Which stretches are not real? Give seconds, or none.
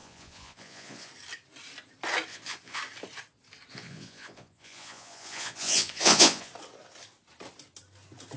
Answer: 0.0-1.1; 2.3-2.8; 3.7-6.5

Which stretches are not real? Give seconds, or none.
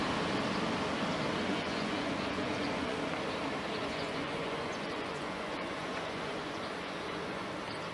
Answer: 1.5-3.1; 3.8-7.5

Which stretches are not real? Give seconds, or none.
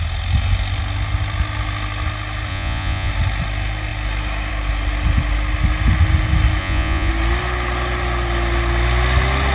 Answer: 2.5-3.1; 6.6-7.1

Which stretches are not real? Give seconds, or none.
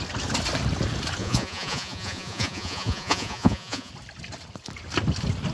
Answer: 1.2-3.9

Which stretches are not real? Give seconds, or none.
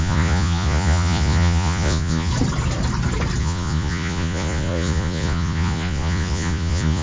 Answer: 0.0-2.3; 3.4-7.0